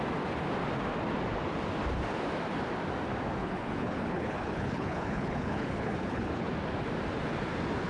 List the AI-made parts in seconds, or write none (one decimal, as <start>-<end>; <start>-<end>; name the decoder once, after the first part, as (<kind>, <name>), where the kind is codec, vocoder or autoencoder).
3.4-6.5 (codec, HILCodec)

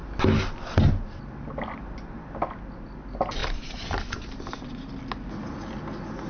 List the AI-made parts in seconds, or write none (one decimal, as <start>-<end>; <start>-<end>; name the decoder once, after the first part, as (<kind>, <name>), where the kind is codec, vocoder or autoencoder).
3.4-4.1 (vocoder, BigVGAN v2)

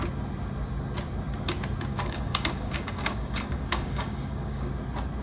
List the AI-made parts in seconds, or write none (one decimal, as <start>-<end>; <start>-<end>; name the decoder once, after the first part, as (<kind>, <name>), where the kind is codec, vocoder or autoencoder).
1.9-4.7 (codec, DAC)

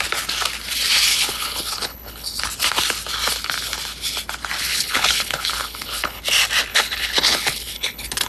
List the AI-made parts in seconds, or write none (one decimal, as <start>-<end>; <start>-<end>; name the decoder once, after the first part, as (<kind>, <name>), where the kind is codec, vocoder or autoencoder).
1.1-2.4 (codec, HILCodec); 4.7-6.2; 6.7-8.3

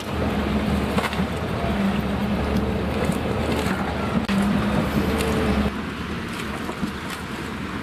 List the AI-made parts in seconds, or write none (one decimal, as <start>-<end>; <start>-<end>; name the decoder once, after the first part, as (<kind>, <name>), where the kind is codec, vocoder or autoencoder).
2.2-3.4 (vocoder, BigVGAN v2)